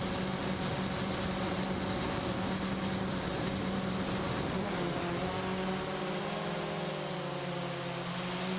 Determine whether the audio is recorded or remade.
recorded